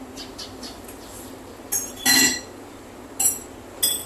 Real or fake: real